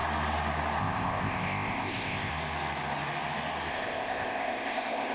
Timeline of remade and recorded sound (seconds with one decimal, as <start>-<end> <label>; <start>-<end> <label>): 0.0-0.8 recorded; 0.8-2.3 remade; 2.3-3.7 recorded; 3.7-5.1 remade